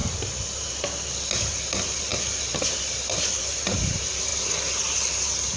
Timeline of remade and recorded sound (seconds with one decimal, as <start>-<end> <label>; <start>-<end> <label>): 0.0-5.6 recorded